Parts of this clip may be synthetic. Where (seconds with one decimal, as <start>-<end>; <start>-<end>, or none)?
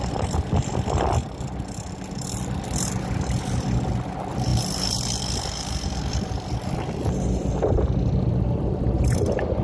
none